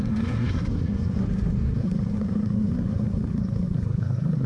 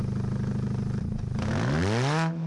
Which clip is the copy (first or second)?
first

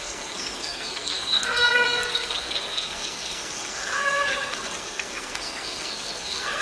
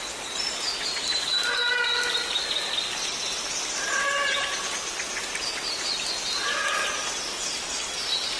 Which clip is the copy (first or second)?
first